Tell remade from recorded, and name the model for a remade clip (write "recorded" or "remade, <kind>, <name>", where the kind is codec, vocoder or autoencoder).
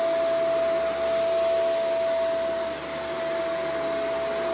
recorded